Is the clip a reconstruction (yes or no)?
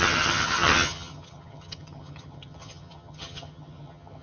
yes